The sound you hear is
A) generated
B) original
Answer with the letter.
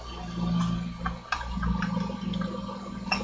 B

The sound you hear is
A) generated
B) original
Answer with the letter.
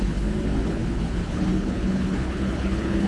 A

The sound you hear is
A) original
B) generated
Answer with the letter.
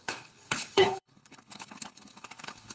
B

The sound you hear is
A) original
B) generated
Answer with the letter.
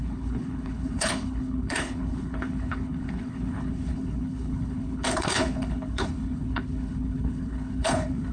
B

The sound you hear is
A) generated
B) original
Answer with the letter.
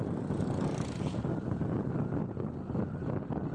B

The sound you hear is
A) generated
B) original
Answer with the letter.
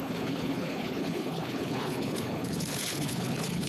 A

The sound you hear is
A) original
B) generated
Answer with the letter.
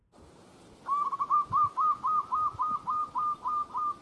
A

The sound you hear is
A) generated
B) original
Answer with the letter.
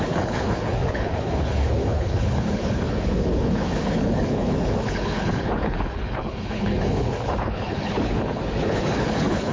A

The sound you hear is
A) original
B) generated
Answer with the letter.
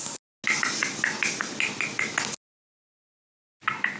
A